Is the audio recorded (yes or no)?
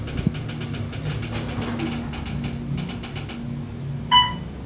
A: yes